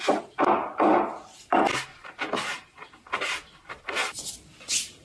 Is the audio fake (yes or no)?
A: no